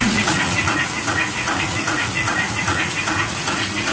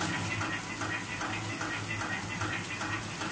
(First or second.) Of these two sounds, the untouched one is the second